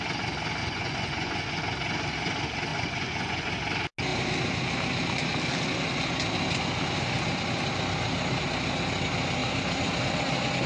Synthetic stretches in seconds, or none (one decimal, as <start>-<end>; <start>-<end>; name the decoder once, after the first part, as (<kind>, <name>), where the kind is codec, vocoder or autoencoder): 0.6-1.6 (vocoder, Vocos); 2.7-3.5